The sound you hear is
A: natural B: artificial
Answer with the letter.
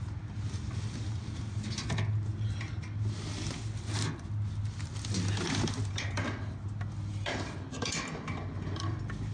A